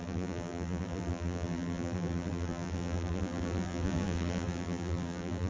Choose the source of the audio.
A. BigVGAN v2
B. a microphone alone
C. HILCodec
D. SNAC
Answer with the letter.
A